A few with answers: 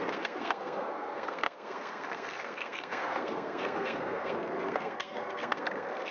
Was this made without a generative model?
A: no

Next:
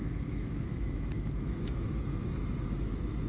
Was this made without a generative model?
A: no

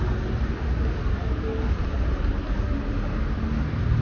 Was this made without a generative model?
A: yes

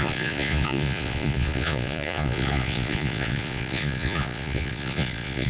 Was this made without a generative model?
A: no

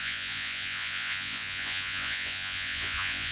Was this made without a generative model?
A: no